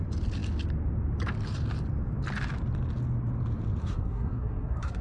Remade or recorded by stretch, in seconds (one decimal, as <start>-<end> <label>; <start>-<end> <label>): 0.0-3.8 recorded; 3.8-5.0 remade